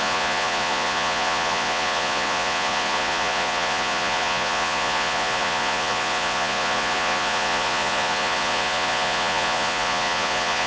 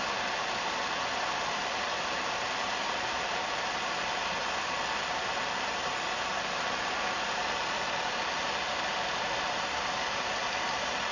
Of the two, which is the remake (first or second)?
first